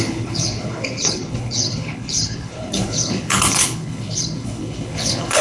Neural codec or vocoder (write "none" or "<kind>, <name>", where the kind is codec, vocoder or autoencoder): codec, HILCodec